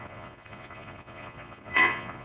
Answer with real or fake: fake